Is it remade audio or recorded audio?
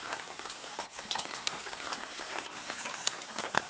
remade